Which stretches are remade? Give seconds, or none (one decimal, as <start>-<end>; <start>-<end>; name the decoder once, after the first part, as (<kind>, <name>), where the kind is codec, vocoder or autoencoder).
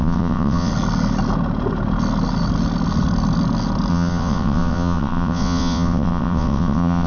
0.0-0.7 (vocoder, WaveNeXt); 3.9-7.1